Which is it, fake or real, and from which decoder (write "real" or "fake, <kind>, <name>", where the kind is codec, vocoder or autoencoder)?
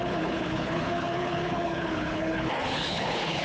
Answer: fake, codec, HILCodec